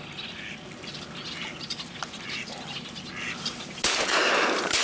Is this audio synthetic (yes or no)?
no